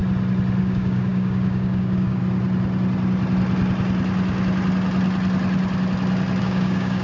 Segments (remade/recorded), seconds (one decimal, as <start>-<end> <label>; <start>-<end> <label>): 0.0-0.6 recorded; 0.6-2.2 remade; 2.2-6.4 recorded; 6.4-7.0 remade